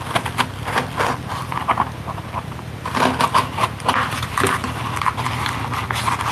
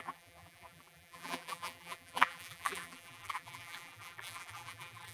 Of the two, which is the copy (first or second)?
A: second